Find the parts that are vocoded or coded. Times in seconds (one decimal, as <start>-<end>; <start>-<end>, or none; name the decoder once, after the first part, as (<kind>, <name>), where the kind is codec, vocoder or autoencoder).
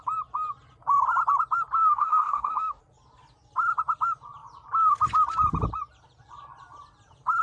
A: 1.8-2.8 (autoencoder, DAC-VAE)